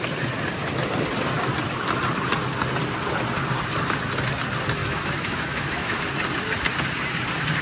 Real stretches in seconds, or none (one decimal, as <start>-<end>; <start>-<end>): 0.0-4.8; 6.0-7.6